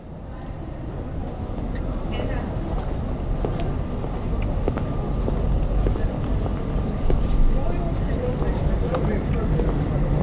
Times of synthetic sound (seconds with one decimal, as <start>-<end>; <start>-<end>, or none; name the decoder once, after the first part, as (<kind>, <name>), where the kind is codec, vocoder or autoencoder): 0.0-1.2 (vocoder, BigVGAN v2); 5.5-6.5; 8.0-10.2